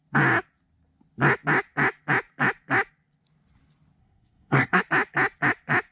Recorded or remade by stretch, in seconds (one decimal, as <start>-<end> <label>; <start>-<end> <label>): 0.0-4.0 recorded; 4.0-4.8 remade; 4.8-5.9 recorded